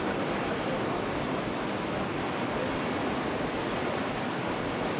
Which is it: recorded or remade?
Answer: recorded